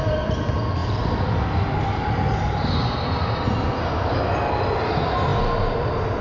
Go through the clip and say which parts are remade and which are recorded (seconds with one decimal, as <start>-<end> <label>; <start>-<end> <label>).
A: 0.0-6.2 recorded